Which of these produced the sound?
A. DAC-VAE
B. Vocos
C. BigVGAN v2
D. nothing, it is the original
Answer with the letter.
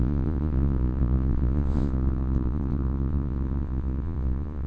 B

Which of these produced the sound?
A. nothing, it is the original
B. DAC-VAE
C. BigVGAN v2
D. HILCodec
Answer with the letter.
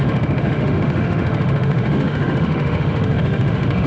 B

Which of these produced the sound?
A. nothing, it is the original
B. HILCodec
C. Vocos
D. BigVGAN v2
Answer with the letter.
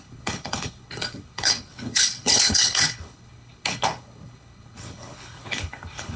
B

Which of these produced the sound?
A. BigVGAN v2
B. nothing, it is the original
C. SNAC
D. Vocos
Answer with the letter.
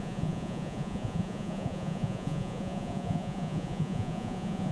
D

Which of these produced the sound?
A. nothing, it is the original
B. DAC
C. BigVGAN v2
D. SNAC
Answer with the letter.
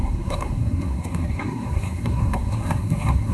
D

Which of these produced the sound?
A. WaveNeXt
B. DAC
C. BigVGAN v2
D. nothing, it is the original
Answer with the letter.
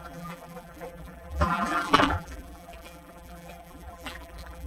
C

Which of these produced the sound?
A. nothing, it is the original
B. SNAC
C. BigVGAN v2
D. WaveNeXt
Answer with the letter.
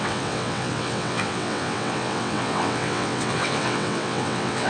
D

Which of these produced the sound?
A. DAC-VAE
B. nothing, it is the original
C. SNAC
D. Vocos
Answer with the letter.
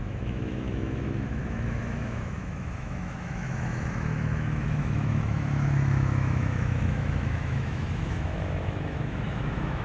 A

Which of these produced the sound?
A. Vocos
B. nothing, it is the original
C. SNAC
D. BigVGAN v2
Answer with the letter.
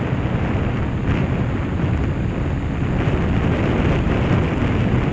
B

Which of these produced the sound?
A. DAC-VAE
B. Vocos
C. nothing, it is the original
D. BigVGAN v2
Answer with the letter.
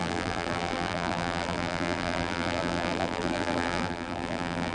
D